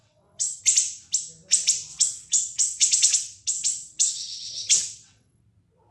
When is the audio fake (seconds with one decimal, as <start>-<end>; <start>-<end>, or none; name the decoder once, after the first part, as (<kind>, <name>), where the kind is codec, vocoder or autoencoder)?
0.0-0.6 (vocoder, WaveNeXt); 1.9-5.4